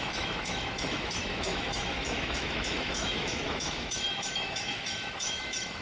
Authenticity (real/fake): fake